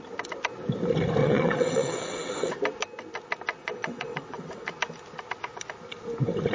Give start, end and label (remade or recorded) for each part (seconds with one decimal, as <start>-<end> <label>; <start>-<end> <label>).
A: 0.0-1.2 recorded; 1.2-2.6 remade; 2.6-3.6 recorded; 3.6-4.7 remade; 4.7-6.5 recorded